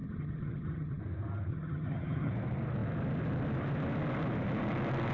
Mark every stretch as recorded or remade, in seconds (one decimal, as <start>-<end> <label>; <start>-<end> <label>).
0.0-1.0 remade; 1.0-1.5 recorded; 1.5-2.3 remade; 2.3-5.1 recorded